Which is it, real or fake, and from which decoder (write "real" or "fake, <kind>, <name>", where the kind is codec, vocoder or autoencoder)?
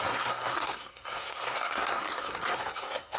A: fake, codec, SNAC